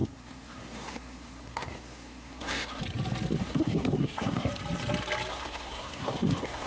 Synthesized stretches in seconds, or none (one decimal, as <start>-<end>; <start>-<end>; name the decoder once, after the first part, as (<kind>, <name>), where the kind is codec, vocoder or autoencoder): 0.0-2.8 (codec, SNAC); 3.4-4.5; 5.3-6.7